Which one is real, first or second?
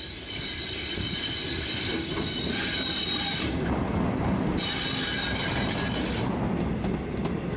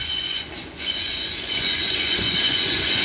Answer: first